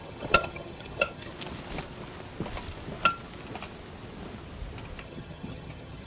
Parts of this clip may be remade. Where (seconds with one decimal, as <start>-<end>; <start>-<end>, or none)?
0.0-1.3; 5.0-6.1